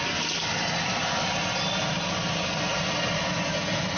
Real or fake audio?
real